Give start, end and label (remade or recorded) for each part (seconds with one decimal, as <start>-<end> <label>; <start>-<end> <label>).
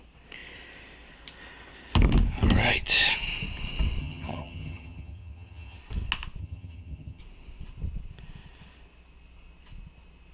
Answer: 0.0-4.0 recorded; 4.0-5.8 remade; 5.8-6.4 recorded; 6.4-7.2 remade; 7.2-10.3 recorded